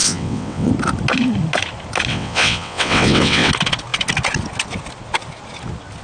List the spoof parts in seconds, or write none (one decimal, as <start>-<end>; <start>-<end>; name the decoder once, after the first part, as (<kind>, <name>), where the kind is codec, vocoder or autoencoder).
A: 0.0-0.7 (vocoder, WaveNeXt); 2.1-3.5